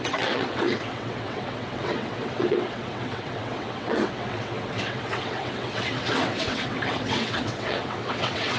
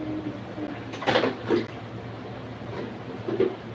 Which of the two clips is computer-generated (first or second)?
first